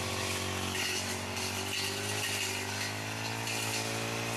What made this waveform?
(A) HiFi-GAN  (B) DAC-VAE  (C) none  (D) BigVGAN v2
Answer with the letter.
C